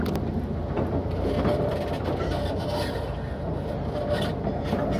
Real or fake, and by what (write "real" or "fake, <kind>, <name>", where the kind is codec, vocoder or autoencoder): real